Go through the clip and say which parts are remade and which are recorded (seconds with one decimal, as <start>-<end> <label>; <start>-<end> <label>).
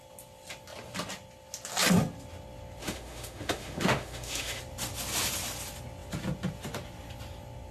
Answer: 0.0-2.8 recorded; 2.8-4.6 remade; 4.6-7.7 recorded